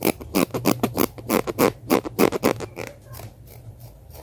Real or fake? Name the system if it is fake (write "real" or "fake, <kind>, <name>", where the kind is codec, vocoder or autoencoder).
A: fake, vocoder, BigVGAN v2